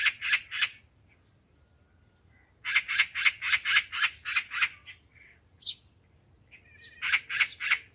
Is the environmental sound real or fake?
real